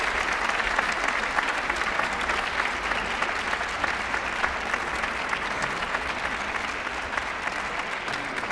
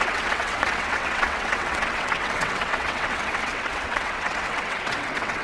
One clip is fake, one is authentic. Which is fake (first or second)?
second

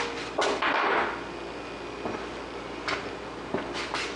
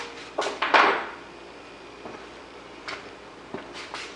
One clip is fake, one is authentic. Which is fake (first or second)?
second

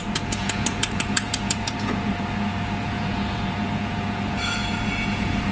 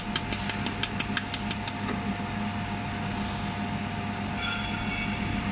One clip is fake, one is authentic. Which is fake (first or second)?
first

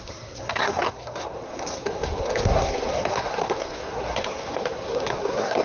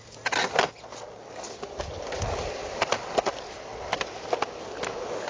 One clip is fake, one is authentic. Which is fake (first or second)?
first